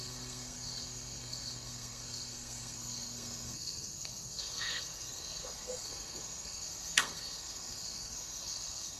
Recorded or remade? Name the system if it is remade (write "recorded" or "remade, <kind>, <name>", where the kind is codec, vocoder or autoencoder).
remade, codec, SNAC